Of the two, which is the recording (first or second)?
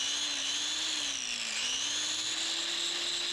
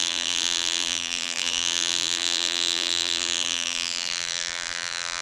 first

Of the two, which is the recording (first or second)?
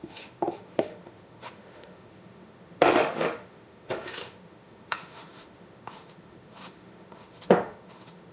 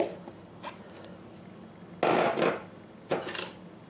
second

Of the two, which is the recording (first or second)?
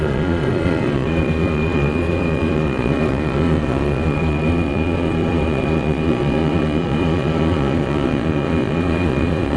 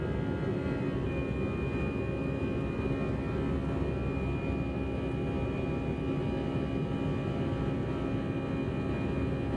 second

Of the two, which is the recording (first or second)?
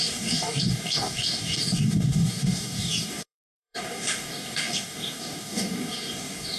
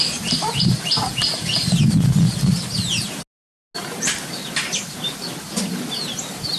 second